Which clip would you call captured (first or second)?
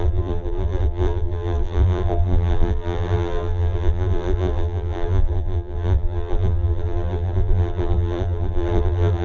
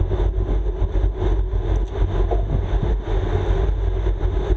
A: second